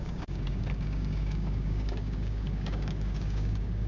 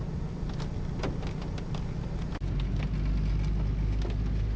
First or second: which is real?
second